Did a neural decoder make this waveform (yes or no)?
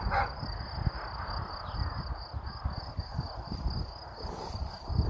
no